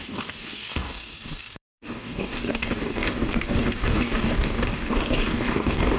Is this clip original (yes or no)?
no